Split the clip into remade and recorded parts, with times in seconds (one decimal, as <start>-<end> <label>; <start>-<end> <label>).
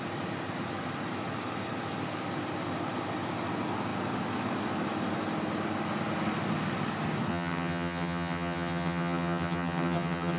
0.0-7.3 recorded; 7.3-10.4 remade